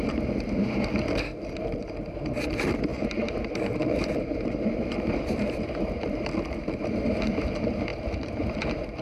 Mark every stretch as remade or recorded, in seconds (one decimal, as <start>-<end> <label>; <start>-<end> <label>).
0.0-2.9 recorded; 2.9-6.2 remade; 6.2-7.9 recorded; 7.9-9.0 remade